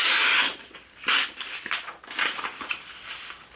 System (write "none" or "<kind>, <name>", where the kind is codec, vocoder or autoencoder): none